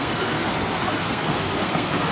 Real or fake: fake